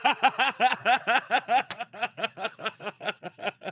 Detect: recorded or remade remade